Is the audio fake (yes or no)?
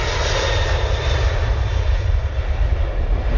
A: no